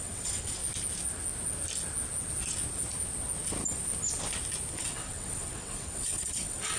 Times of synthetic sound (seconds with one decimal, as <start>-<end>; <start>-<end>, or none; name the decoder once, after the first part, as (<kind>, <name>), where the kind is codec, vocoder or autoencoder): 0.0-0.6 (vocoder, WaveNeXt); 4.7-6.8